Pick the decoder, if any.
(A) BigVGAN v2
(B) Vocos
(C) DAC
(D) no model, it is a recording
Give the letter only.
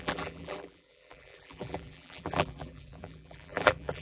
A